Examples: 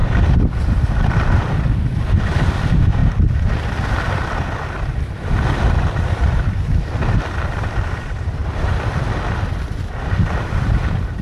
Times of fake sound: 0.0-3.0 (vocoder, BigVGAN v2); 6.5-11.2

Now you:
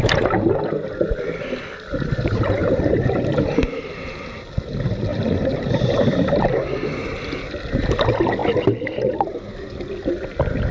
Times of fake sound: 2.6-3.8 (vocoder, BigVGAN v2); 5.1-6.3; 8.4-9.5

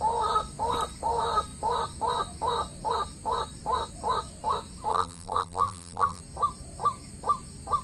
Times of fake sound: 4.9-6.2 (vocoder, BigVGAN v2)

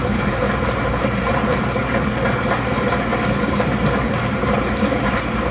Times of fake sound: 0.0-1.8 (vocoder, BigVGAN v2); 3.4-5.5

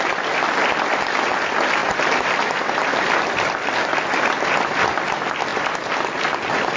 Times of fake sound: 5.5-6.8 (vocoder, BigVGAN v2)

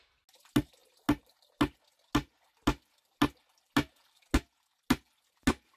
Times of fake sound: none